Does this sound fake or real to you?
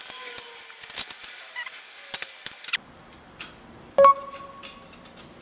real